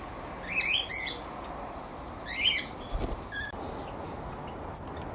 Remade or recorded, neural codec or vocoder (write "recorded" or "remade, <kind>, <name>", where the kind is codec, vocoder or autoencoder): recorded